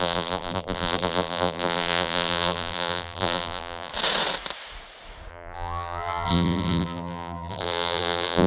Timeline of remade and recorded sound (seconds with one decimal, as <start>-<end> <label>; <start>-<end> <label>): 0.0-3.9 remade; 3.9-5.3 recorded; 5.3-8.5 remade